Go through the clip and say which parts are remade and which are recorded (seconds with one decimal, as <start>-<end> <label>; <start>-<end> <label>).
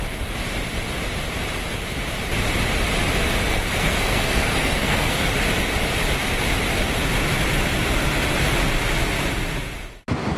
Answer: 0.0-3.5 recorded; 3.5-5.3 remade; 5.3-10.4 recorded